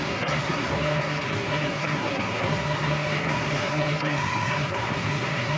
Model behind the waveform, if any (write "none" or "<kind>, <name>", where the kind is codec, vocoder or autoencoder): codec, SNAC